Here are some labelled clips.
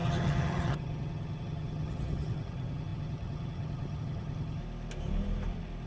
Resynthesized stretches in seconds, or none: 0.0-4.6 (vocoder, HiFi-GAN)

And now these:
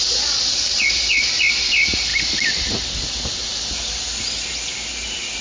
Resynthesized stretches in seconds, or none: none

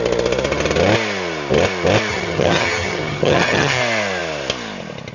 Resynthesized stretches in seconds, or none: 2.1-3.8 (vocoder, HiFi-GAN)

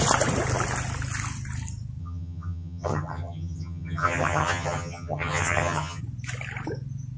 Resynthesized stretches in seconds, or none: 2.0-6.0 (vocoder, HiFi-GAN)

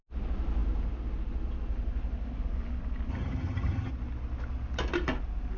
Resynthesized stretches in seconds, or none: 3.1-3.9 (vocoder, HiFi-GAN)